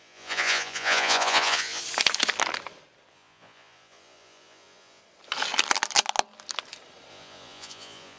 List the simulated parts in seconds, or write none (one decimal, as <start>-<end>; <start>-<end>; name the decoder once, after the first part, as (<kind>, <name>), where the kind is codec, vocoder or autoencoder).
0.0-1.8 (vocoder, Vocos); 3.1-5.0; 7.1-8.2